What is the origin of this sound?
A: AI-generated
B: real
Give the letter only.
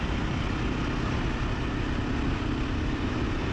B